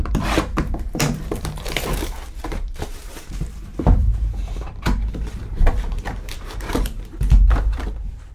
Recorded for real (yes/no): no